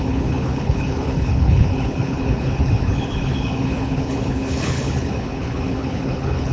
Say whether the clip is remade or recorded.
remade